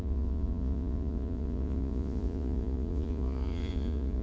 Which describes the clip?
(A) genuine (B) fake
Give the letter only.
B